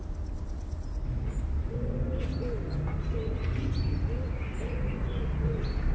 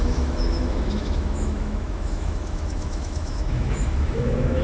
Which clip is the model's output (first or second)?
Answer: second